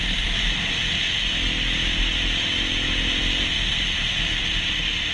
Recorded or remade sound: recorded